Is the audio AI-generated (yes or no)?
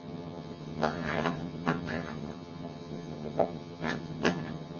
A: yes